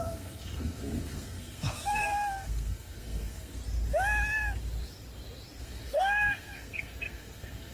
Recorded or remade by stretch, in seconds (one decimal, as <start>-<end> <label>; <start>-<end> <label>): 0.0-3.6 remade; 3.6-5.6 recorded; 5.6-7.7 remade